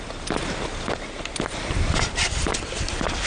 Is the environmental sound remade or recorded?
recorded